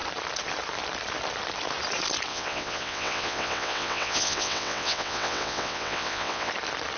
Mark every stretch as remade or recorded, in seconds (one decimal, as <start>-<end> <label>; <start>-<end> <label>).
0.0-2.3 recorded; 2.3-6.5 remade; 6.5-7.0 recorded